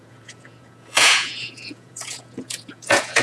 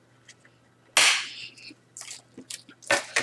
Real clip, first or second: second